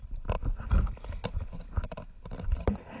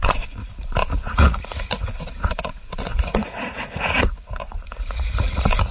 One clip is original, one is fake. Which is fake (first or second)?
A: second